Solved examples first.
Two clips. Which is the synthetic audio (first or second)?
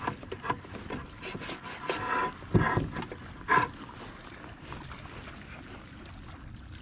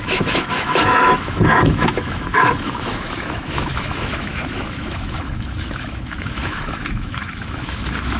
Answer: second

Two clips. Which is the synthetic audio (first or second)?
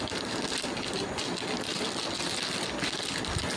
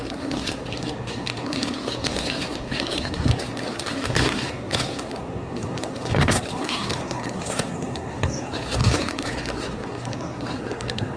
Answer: second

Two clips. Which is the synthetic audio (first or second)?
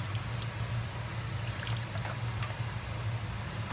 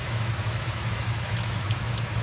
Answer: second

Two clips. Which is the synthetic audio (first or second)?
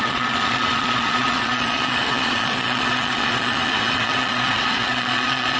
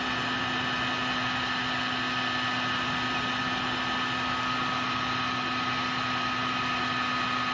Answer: first